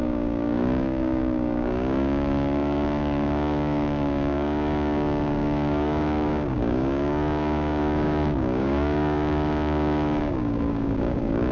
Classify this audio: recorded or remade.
remade